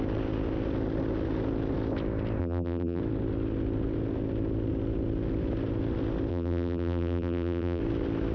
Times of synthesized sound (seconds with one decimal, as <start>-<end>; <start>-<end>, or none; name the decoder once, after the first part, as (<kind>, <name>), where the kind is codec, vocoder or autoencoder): 2.4-3.0 (vocoder, BigVGAN v2); 6.3-7.8